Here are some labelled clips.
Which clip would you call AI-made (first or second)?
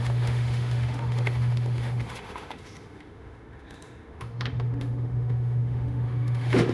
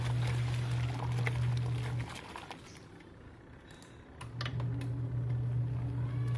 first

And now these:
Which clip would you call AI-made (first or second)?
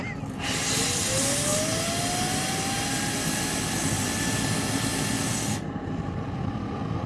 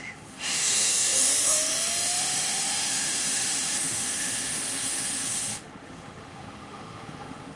second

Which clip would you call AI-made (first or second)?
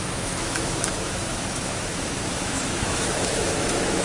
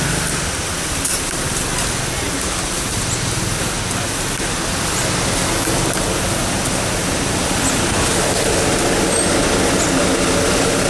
first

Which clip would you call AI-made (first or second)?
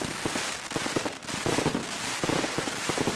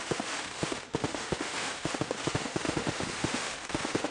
second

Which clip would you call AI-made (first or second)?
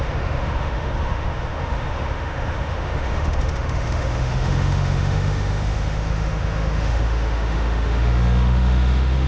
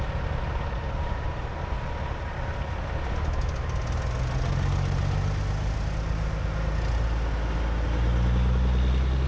first